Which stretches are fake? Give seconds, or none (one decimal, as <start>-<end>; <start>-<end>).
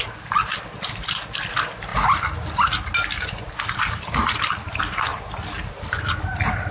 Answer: none